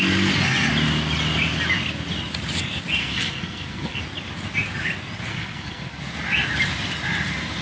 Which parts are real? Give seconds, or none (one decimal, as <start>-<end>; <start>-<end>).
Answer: 0.0-3.0; 4.0-5.3; 6.0-7.6